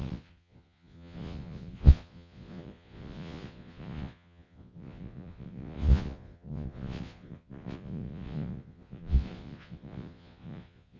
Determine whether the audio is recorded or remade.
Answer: remade